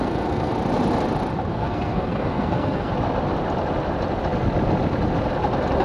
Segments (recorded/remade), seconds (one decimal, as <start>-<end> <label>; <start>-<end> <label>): 0.0-0.5 remade; 0.5-1.5 recorded; 1.5-2.9 remade; 2.9-5.8 recorded